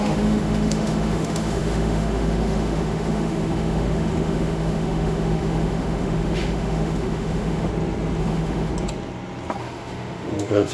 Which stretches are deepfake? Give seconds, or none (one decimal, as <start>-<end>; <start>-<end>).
0.0-7.7; 8.2-8.7; 9.6-10.7